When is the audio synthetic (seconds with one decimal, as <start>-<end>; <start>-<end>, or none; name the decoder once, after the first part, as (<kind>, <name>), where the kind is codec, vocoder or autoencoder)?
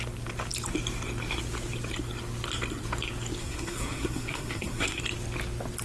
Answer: 3.4-5.0 (codec, SNAC)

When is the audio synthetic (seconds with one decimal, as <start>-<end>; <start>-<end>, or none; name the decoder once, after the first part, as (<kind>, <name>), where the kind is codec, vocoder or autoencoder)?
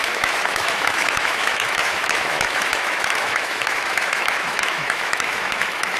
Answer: 0.0-6.0 (autoencoder, DAC-VAE)